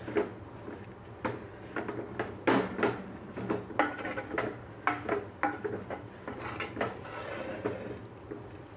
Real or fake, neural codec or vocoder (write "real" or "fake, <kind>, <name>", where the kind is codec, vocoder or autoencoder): real